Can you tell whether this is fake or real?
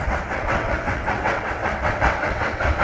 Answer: fake